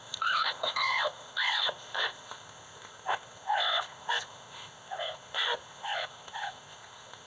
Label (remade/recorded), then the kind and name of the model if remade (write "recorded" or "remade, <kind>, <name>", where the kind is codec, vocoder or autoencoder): remade, codec, ZipCodec